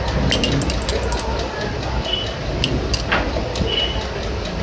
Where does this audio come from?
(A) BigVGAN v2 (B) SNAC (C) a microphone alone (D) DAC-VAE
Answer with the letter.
C